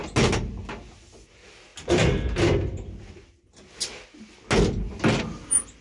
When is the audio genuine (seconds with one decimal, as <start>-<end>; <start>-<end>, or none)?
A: 0.0-5.8